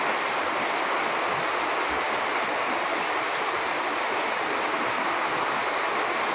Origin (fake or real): real